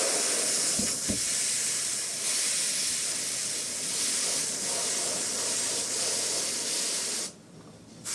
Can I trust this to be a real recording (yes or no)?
yes